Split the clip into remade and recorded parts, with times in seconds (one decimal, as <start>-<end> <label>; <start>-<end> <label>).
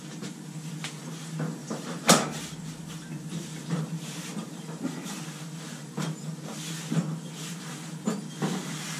0.0-1.6 recorded; 1.6-2.4 remade; 2.4-4.3 recorded; 4.3-5.2 remade; 5.2-9.0 recorded